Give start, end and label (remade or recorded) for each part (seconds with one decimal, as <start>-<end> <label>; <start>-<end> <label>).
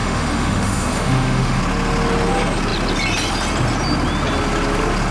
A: 0.0-1.6 remade; 1.6-5.1 recorded